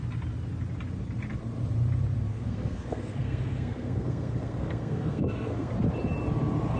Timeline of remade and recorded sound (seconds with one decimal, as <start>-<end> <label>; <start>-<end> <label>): 0.0-2.3 recorded; 2.3-5.7 remade; 5.7-6.8 recorded